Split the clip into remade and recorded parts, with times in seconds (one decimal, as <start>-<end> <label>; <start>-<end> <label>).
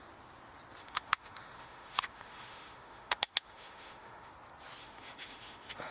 0.0-0.8 recorded; 0.8-4.3 remade; 4.3-4.8 recorded; 4.8-5.9 remade